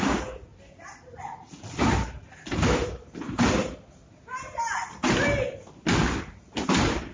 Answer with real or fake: real